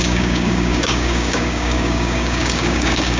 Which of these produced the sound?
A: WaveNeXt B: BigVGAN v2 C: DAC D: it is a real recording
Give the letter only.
C